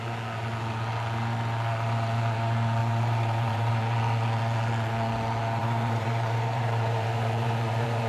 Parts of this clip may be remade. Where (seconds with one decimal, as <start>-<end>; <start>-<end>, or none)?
2.8-3.7; 5.6-8.1